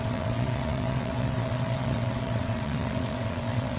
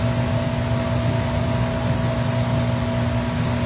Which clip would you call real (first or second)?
second